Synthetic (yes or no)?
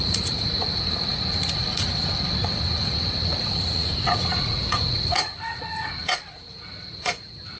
yes